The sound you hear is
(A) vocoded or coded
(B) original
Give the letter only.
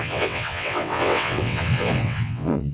A